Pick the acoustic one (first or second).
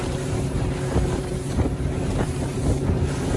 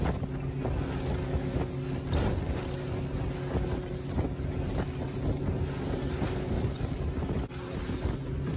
second